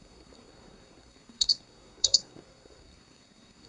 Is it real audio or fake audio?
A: fake